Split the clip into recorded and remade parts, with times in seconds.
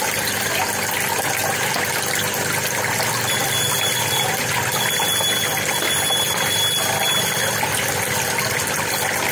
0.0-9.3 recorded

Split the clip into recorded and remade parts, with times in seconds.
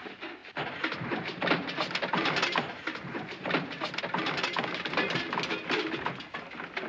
0.0-0.4 recorded; 0.4-4.0 remade; 4.0-6.9 recorded